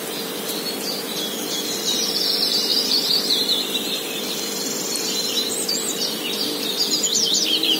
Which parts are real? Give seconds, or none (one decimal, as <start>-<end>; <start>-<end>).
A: 0.0-2.7; 6.9-7.8